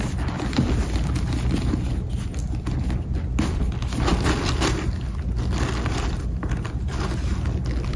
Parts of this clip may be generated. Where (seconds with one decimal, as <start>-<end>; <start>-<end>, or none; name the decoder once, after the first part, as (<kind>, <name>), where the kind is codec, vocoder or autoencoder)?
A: none